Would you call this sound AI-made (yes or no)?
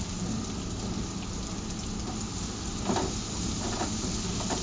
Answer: no